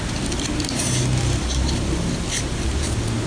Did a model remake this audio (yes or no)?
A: no